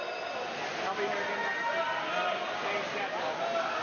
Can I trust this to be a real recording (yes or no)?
yes